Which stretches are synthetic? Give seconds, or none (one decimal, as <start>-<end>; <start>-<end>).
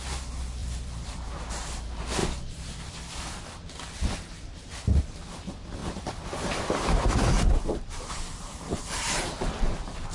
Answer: 0.6-1.4; 5.8-9.7